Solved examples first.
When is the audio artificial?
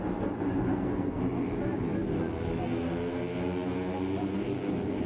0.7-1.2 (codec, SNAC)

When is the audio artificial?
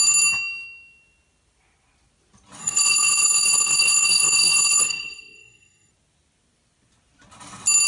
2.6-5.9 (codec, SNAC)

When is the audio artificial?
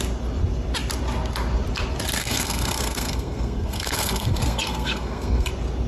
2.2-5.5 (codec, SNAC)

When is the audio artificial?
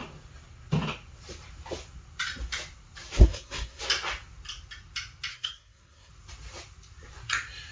3.2-3.8 (codec, SNAC); 5.3-6.1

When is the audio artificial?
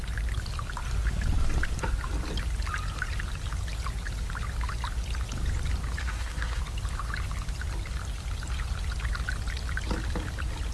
6.0-6.6 (codec, SNAC)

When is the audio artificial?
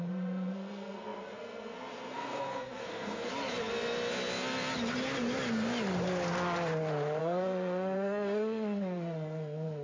0.0-3.3 (codec, SNAC); 7.2-9.8